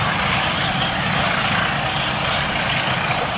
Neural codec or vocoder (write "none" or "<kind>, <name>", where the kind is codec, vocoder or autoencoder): none